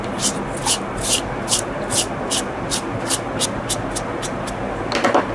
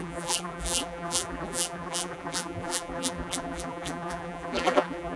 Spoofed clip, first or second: second